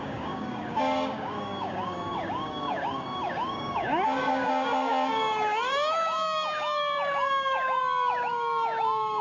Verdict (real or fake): fake